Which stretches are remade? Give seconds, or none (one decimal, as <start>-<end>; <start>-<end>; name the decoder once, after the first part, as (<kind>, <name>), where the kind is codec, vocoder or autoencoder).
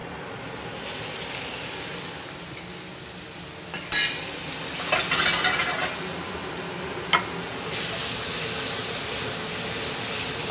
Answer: none